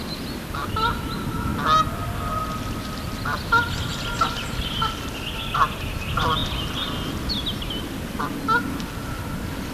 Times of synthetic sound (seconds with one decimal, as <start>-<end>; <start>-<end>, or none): none